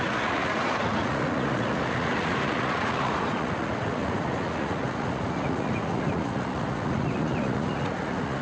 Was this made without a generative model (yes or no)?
no